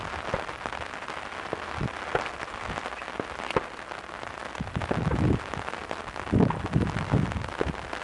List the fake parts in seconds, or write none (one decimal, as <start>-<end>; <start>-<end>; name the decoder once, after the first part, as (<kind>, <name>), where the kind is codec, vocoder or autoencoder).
none